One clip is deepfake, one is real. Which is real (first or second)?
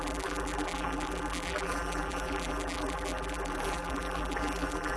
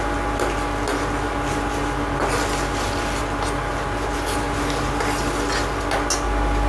second